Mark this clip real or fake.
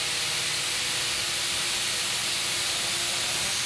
real